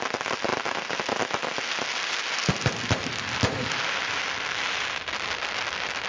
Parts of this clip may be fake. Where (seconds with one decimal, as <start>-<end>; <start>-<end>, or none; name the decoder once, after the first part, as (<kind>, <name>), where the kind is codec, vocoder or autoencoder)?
none